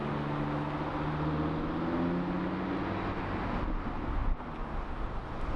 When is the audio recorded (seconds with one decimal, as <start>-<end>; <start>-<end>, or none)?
0.0-5.6